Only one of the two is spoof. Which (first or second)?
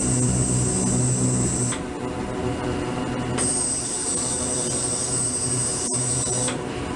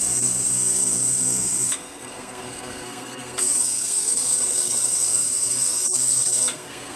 second